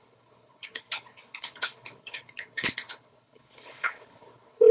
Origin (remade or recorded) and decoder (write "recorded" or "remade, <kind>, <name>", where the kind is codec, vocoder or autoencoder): remade, codec, HILCodec